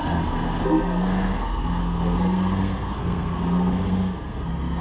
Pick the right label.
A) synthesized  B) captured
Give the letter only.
A